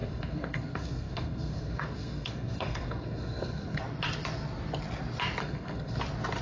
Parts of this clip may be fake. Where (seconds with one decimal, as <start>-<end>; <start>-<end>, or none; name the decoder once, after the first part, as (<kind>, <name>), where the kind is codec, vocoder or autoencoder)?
0.0-3.8 (codec, SNAC); 5.4-6.0